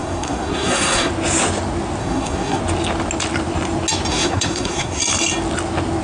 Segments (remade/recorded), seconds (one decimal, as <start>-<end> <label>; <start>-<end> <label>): 0.0-1.1 remade; 1.1-2.0 recorded; 2.0-2.6 remade; 2.6-4.1 recorded; 4.1-5.0 remade; 5.0-6.0 recorded